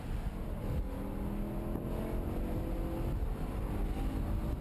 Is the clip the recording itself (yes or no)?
yes